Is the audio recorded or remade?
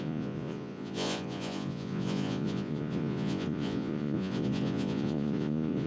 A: remade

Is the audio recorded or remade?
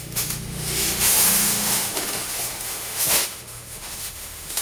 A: remade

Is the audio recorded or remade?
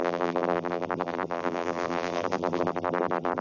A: remade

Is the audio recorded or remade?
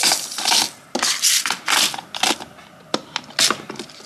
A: recorded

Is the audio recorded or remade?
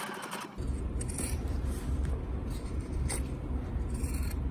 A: remade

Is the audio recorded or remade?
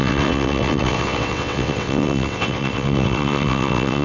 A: remade